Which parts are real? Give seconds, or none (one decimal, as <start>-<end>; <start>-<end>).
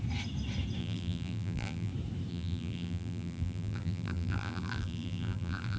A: 0.0-0.8; 1.9-2.3